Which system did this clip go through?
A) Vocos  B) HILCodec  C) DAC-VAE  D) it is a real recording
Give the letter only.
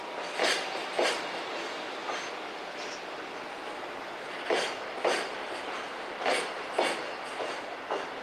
D